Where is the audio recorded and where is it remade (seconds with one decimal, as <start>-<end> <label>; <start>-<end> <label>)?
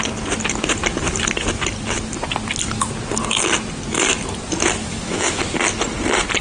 0.0-4.8 recorded; 4.8-5.4 remade; 5.4-6.4 recorded